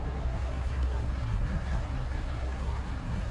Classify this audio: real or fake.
fake